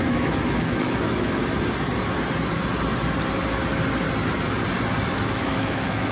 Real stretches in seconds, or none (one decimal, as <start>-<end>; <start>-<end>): 1.4-5.1